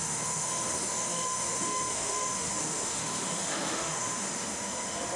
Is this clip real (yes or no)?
no